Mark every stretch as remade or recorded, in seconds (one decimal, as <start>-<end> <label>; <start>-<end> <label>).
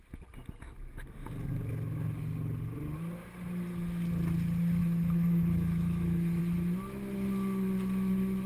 0.0-4.8 recorded; 4.8-6.4 remade; 6.4-8.5 recorded